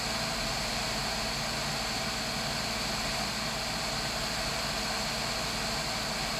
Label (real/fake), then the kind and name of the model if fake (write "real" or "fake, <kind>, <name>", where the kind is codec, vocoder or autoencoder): real